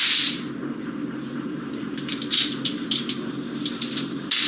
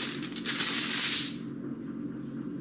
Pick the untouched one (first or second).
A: second